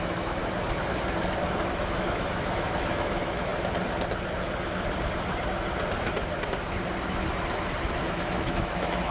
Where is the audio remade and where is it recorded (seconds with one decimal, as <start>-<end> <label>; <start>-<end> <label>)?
0.0-0.4 remade; 0.4-1.7 recorded; 1.7-3.5 remade; 3.5-8.0 recorded; 8.0-9.1 remade